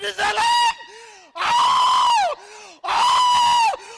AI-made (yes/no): no